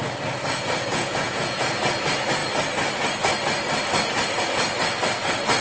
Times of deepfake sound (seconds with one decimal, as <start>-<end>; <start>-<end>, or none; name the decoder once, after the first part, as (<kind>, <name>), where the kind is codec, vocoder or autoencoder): 0.9-1.8 (vocoder, Vocos)